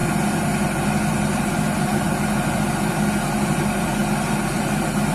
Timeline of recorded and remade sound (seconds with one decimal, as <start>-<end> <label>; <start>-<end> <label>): 0.0-5.1 recorded